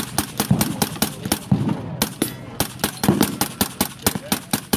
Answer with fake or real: real